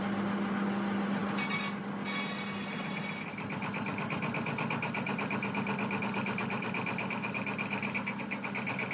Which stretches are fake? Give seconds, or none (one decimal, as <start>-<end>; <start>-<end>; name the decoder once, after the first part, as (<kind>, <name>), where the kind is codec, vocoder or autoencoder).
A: none